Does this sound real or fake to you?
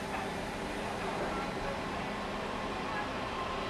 real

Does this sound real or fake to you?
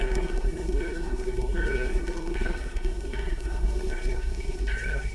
fake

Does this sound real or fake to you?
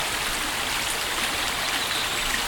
real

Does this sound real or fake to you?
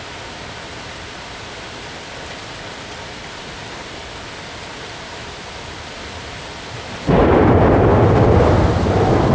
real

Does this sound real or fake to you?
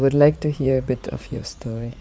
fake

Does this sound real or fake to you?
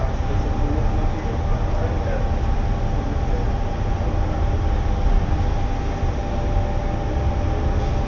real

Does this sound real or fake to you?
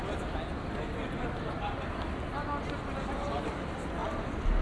real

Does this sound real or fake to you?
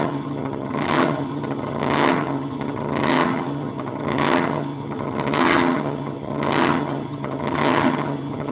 fake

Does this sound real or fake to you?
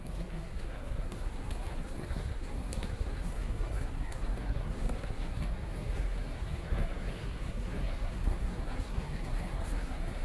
fake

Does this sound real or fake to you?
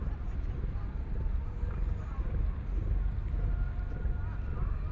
real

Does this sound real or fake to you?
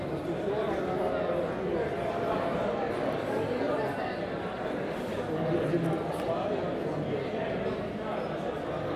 real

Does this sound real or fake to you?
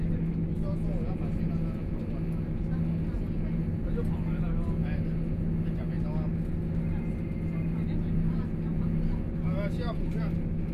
real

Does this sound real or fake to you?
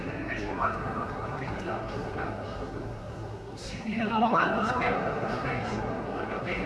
fake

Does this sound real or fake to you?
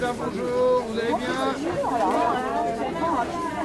real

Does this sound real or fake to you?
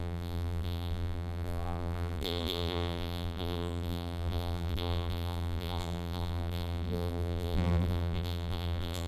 fake